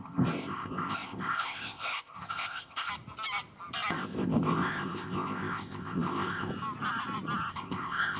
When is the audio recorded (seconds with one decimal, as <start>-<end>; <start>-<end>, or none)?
2.9-3.9; 6.5-7.5

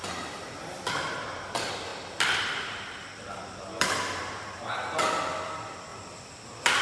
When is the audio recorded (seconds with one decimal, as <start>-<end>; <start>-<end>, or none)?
0.0-0.6; 1.4-1.9; 4.6-5.9

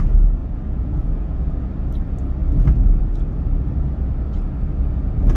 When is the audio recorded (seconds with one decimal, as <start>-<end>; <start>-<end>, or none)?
0.0-0.4; 1.7-5.4

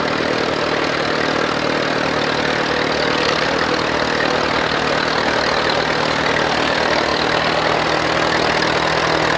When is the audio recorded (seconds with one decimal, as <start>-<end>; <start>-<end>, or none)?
0.0-9.4